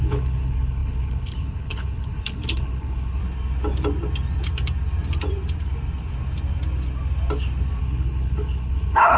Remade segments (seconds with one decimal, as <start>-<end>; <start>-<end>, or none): 0.0-3.2; 7.8-9.2

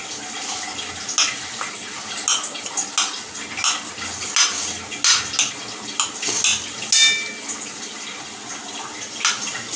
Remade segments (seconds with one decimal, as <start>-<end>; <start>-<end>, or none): none

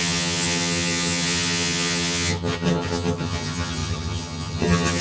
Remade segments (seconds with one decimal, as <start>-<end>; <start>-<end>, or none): 0.0-5.0

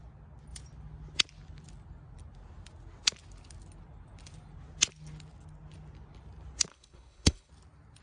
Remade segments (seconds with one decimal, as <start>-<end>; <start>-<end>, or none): 6.7-7.5

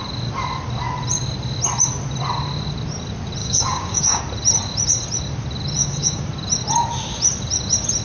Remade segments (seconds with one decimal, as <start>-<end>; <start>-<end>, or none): 3.4-4.2; 5.8-6.3

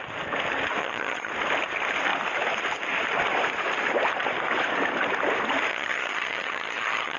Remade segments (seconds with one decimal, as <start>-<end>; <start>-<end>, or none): 0.8-1.3; 5.7-7.2

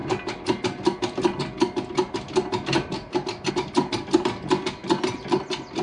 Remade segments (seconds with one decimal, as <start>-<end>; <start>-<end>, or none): none